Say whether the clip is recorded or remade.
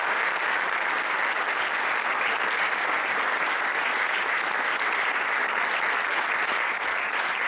recorded